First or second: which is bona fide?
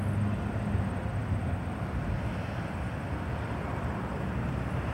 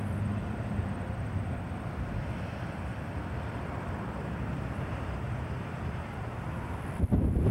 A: first